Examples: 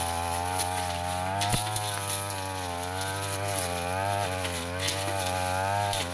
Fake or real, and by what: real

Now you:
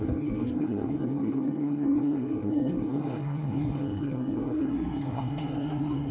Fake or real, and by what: fake, codec, SNAC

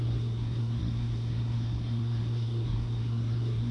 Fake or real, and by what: fake, codec, SNAC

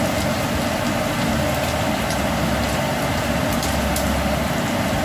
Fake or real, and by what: real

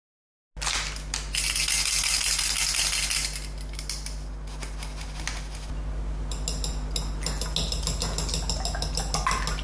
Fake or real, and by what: real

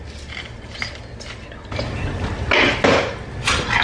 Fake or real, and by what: real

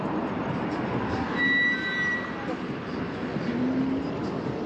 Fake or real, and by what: real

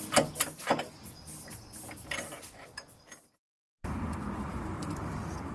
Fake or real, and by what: real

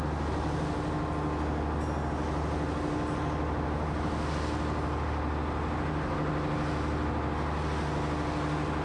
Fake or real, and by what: real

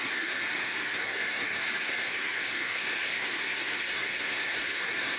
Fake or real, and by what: fake, codec, SNAC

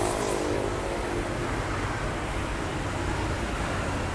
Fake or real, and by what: real